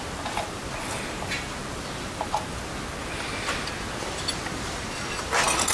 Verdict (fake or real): real